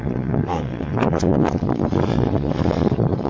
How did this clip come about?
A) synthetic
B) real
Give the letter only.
A